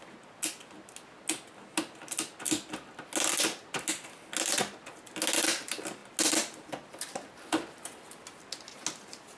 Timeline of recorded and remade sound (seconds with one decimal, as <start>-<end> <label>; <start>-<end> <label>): 0.0-9.4 recorded